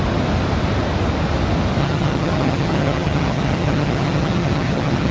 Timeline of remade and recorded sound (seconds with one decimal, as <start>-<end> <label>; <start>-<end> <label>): 0.0-1.8 recorded; 1.8-5.1 remade